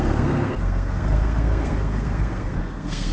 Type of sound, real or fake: fake